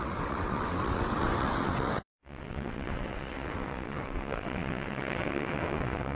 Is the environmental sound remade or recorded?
remade